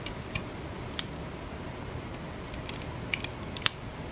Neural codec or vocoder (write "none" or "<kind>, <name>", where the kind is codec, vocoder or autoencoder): none